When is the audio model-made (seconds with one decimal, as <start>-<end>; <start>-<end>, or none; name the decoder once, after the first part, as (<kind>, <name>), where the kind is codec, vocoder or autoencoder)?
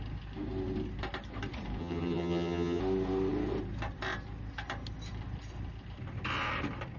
1.8-2.8 (vocoder, HiFi-GAN)